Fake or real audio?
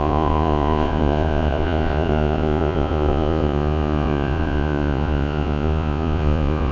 fake